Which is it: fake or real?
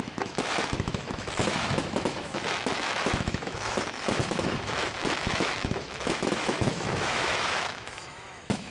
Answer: fake